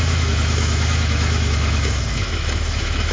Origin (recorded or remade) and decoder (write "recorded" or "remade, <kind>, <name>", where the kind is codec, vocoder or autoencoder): remade, autoencoder, DAC-VAE